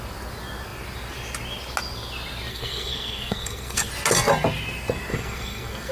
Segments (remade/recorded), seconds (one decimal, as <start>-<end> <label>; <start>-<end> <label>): 0.0-2.5 recorded; 2.5-3.9 remade; 3.9-5.1 recorded; 5.1-5.9 remade